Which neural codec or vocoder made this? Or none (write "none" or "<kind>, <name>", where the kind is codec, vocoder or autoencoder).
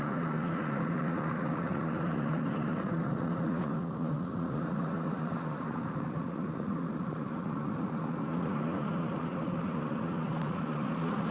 vocoder, Vocos